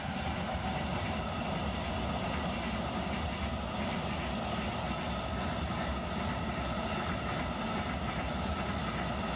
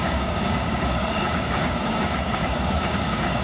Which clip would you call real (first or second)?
first